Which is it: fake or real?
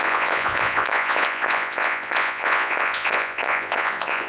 fake